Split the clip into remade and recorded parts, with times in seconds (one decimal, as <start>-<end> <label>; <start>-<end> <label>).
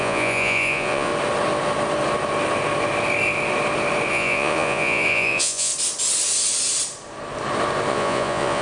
0.0-1.1 remade; 1.1-4.1 recorded; 4.1-5.7 remade; 5.7-7.9 recorded; 7.9-8.6 remade